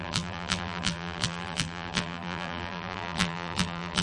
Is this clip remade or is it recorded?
remade